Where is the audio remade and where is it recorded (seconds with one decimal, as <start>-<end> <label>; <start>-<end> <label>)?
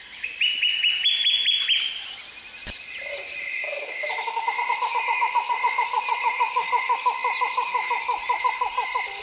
0.0-9.2 recorded